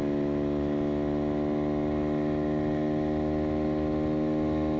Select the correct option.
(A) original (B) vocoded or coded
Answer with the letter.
A